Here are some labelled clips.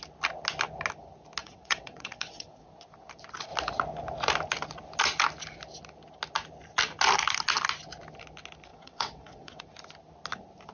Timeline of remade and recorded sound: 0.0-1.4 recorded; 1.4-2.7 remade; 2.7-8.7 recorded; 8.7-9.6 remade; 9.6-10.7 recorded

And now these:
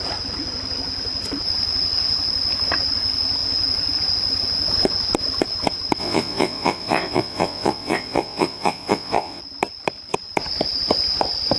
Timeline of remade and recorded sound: 0.0-6.0 recorded; 6.0-9.4 remade; 9.4-11.6 recorded